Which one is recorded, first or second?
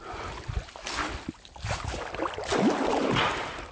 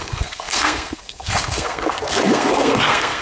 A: first